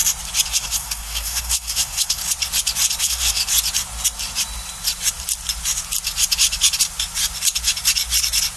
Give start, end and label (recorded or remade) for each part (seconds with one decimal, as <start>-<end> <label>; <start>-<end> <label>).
0.0-0.5 recorded; 0.5-2.2 remade; 2.2-3.0 recorded; 3.0-3.4 remade; 3.4-8.6 recorded